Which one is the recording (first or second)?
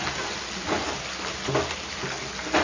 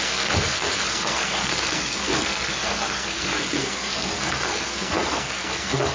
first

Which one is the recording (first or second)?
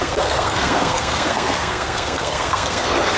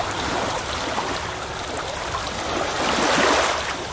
second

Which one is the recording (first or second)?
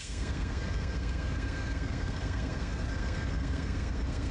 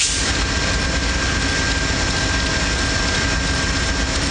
second